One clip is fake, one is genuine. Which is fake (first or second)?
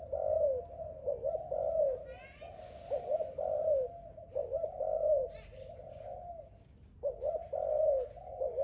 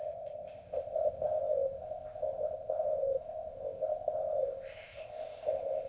second